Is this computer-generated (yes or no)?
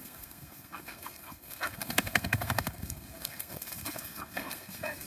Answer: yes